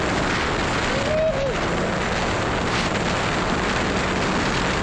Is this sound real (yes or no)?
yes